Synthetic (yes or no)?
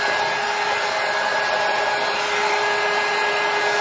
no